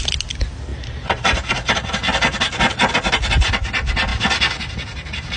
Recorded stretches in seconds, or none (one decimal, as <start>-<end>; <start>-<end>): 0.0-0.7; 2.9-4.1